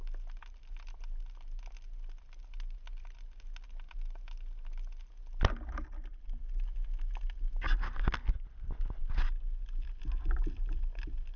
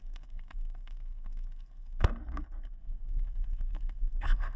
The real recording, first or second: first